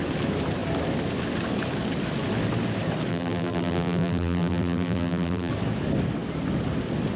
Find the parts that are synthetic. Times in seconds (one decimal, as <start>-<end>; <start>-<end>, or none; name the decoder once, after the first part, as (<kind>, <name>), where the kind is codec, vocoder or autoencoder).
3.1-5.5 (vocoder, BigVGAN v2)